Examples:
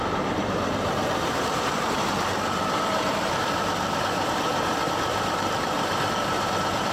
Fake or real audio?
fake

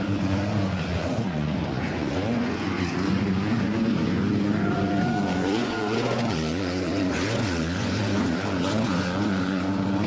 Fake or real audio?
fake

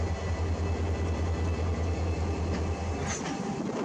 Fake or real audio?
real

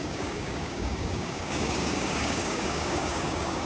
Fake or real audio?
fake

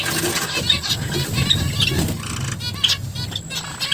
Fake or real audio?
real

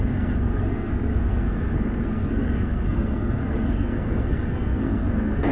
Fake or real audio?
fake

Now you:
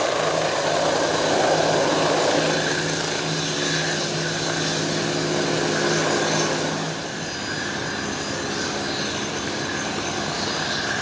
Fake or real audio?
real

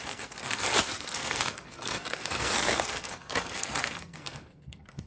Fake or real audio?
fake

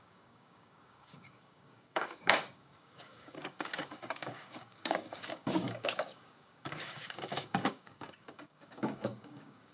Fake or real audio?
fake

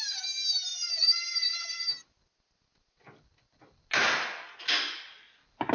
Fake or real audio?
real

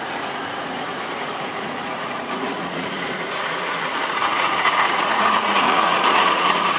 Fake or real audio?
fake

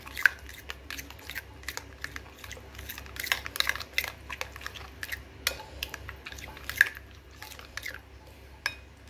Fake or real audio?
real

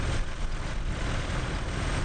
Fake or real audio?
real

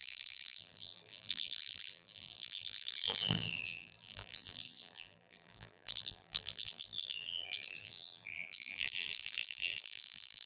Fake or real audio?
fake